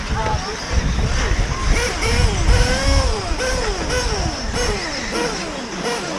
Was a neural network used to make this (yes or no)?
no